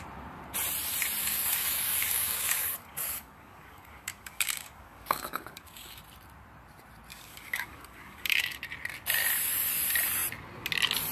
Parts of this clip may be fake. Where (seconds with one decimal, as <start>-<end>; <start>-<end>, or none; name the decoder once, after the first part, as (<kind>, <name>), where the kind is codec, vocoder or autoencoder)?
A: 1.2-6.0 (codec, DAC); 7.1-8.6

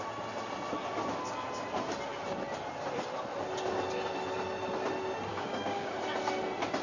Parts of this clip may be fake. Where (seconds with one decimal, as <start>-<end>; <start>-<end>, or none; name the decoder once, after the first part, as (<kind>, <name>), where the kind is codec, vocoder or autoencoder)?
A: 5.3-5.9 (codec, DAC)

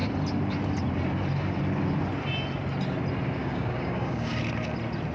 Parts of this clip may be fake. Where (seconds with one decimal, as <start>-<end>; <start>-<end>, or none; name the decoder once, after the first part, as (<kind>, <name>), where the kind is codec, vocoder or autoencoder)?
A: 3.4-4.3 (codec, DAC)

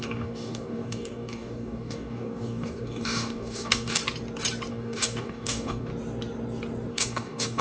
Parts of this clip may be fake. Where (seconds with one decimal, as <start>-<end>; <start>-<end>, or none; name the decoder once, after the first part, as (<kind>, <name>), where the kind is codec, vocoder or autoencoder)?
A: 0.0-4.0 (codec, DAC); 4.7-5.9; 6.9-7.6

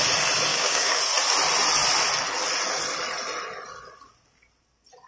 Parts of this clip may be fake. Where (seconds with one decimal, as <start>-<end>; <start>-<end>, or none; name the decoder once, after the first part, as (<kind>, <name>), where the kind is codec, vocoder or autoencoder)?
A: 0.5-1.0 (codec, DAC)